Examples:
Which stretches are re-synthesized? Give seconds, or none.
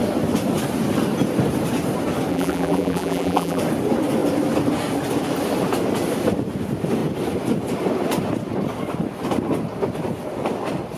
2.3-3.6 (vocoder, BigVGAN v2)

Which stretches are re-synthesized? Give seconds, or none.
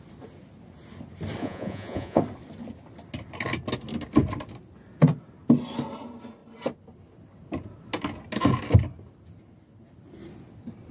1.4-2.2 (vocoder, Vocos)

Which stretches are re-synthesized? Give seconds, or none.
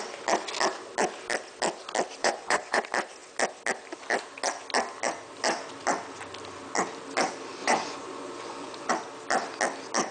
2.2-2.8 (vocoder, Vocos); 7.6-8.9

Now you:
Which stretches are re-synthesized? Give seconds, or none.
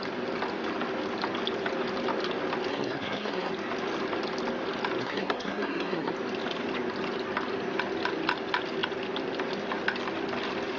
2.7-3.5 (codec, SNAC); 5.0-6.1